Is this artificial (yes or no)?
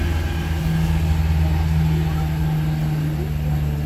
no